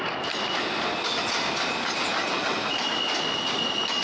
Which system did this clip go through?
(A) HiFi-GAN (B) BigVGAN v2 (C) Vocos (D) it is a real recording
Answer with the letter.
D